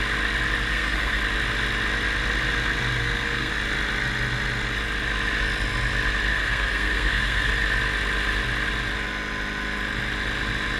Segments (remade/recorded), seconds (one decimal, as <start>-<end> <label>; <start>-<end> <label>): 0.0-0.7 recorded; 0.7-1.2 remade; 1.2-3.0 recorded; 3.0-3.5 remade; 3.5-6.3 recorded; 6.3-7.5 remade; 7.5-10.8 recorded